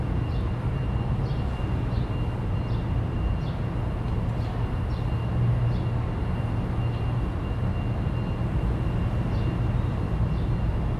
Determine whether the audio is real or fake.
real